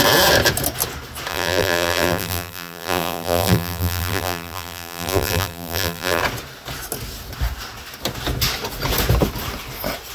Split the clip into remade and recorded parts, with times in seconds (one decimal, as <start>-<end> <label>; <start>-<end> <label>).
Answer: 0.0-1.3 recorded; 1.3-6.2 remade; 6.2-10.1 recorded